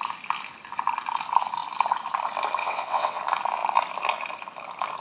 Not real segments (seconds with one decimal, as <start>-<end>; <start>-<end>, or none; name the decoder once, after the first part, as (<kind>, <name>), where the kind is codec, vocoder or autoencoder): 2.6-3.2 (vocoder, WaveNeXt)